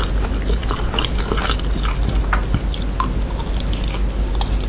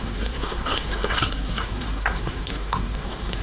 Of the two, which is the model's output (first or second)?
second